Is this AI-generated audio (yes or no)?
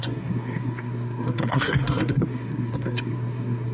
yes